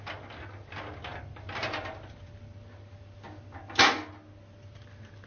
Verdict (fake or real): real